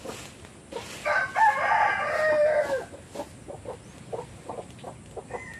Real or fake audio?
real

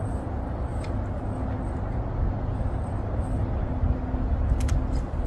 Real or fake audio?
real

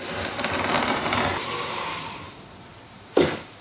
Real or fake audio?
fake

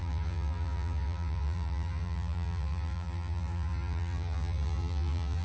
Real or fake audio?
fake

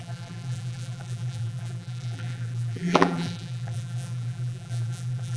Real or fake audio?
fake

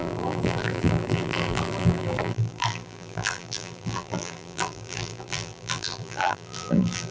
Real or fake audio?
fake